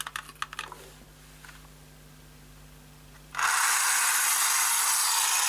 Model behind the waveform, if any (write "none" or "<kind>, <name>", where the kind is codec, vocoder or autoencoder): none